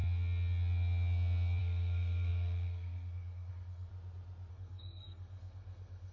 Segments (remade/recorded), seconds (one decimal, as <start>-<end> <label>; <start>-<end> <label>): 0.0-1.6 recorded; 1.6-3.9 remade; 3.9-4.5 recorded; 4.5-6.1 remade